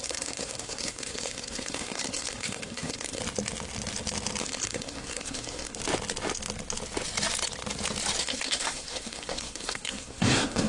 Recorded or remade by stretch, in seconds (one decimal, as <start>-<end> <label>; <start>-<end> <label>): 0.0-3.2 remade; 3.2-4.4 recorded; 4.4-5.8 remade; 5.8-8.2 recorded; 8.2-10.7 remade